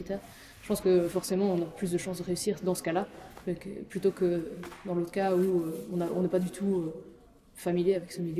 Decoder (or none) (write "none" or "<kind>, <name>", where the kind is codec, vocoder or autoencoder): none